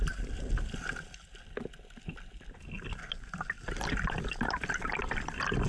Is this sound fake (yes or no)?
no